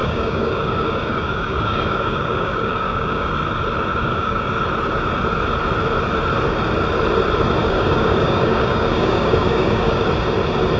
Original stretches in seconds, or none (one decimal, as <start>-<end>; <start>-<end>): 3.3-3.9; 4.5-7.6; 10.1-10.8